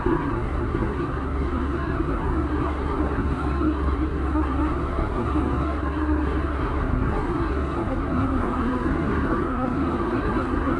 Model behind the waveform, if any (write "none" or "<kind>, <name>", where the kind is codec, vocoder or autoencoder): codec, SNAC